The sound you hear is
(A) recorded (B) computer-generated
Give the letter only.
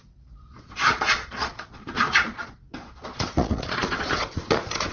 B